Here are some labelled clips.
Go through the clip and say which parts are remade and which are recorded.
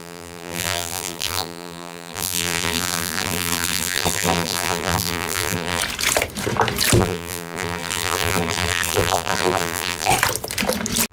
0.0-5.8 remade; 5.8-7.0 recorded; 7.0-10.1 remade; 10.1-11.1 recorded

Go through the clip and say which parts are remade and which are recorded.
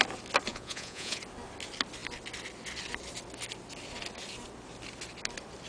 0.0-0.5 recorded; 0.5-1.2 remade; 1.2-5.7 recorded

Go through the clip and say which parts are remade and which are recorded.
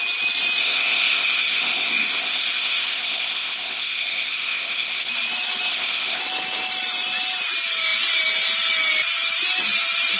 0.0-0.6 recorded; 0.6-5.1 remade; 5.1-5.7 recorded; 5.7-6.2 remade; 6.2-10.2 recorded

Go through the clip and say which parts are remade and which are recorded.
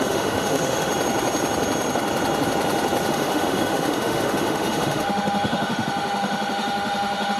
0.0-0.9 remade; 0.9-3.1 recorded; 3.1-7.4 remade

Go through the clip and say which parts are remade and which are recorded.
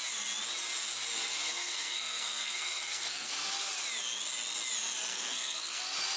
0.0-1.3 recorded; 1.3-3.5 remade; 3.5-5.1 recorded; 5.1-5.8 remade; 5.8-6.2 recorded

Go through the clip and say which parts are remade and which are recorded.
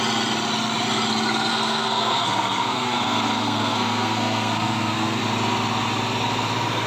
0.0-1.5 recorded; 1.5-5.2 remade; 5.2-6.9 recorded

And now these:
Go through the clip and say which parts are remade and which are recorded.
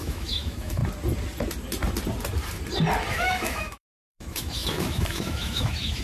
0.0-0.8 remade; 0.8-3.1 recorded; 3.1-6.0 remade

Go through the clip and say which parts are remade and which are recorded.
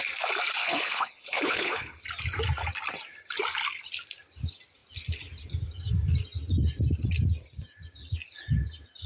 0.0-0.6 recorded; 0.6-2.0 remade; 2.0-9.1 recorded